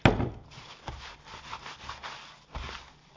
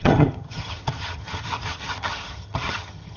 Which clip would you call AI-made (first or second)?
second